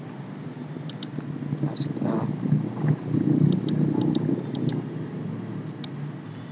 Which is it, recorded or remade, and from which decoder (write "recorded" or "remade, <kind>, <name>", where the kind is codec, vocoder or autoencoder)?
recorded